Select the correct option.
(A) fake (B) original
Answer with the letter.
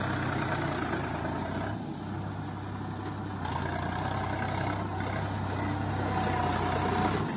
B